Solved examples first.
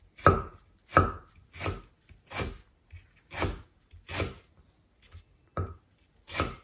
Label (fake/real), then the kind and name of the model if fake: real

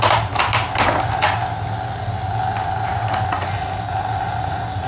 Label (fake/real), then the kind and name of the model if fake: real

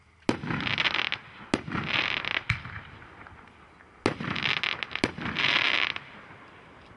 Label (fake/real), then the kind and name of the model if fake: real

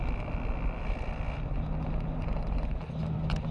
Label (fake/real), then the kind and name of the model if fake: real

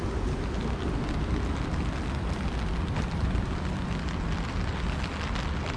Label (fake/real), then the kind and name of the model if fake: real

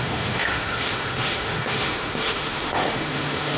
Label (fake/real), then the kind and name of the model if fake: fake, autoencoder, DAC-VAE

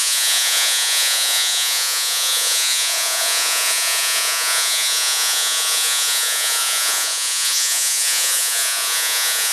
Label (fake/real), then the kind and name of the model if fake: fake, vocoder, Vocos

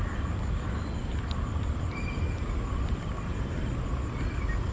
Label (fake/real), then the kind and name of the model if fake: real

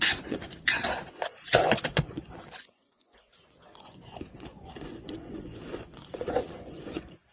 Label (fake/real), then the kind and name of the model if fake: fake, vocoder, Vocos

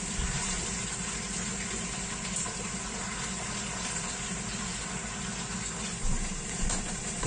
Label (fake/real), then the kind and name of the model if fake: fake, vocoder, BigVGAN v2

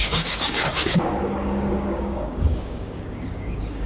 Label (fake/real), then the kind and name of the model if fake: fake, codec, DAC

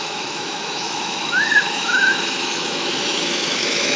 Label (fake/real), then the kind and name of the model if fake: fake, autoencoder, DAC-VAE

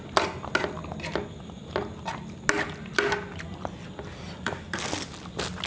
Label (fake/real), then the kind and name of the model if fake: real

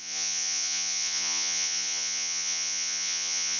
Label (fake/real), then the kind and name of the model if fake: fake, vocoder, Vocos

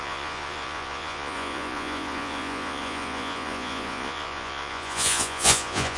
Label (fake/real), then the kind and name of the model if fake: fake, vocoder, Vocos